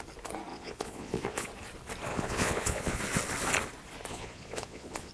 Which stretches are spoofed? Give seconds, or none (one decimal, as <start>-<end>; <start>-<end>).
0.5-1.5; 2.1-3.0; 4.1-5.1